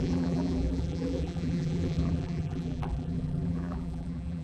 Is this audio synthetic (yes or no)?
yes